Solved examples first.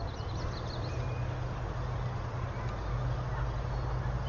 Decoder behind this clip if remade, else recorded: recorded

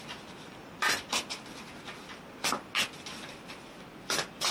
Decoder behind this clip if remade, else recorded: recorded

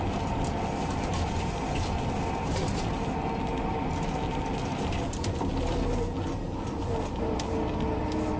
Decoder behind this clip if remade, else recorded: recorded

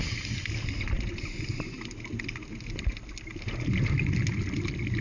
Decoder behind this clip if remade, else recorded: recorded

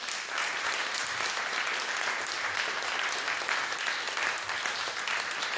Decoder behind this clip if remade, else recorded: recorded